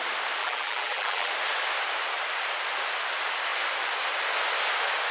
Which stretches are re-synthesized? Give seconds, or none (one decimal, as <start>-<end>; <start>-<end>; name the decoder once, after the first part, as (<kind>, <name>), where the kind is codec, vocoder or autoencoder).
0.4-1.3 (vocoder, BigVGAN v2)